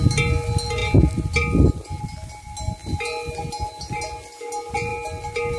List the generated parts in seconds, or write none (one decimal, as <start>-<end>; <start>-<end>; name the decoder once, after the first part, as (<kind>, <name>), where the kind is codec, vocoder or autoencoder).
none